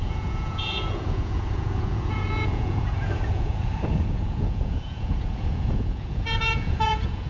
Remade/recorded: remade